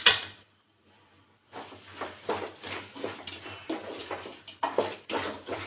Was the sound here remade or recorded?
recorded